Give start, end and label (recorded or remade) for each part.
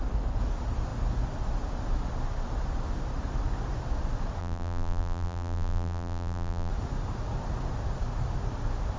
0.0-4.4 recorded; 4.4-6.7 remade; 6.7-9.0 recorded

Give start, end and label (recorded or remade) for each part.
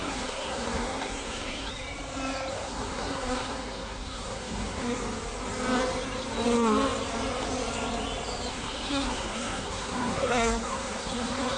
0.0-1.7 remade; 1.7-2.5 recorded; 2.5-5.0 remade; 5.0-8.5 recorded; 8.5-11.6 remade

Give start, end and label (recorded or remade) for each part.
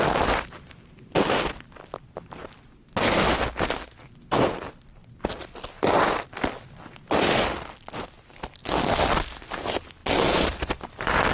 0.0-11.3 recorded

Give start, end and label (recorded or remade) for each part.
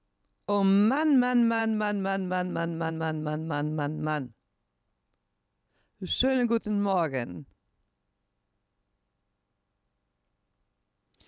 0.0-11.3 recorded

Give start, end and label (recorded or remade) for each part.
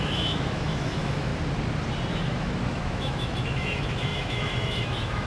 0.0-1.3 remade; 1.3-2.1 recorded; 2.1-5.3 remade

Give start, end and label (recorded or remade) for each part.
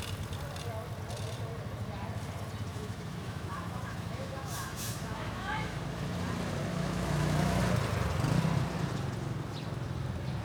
0.0-2.7 recorded; 2.7-5.8 remade; 5.8-6.7 recorded; 6.7-7.6 remade; 7.6-10.4 recorded